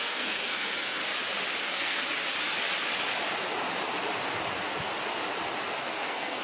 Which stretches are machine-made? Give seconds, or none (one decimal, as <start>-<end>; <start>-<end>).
0.0-1.0; 1.6-2.0; 5.8-6.4